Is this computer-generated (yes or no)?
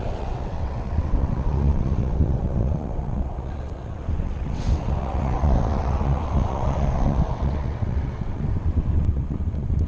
yes